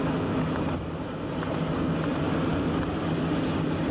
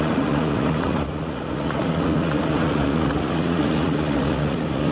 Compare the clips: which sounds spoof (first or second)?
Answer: second